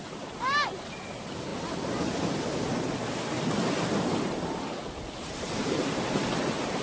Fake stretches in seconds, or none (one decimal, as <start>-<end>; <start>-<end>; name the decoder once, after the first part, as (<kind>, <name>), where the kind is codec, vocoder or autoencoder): none